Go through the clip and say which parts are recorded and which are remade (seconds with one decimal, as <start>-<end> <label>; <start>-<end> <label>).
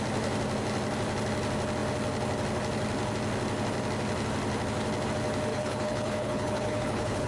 0.0-5.5 recorded; 5.5-7.3 remade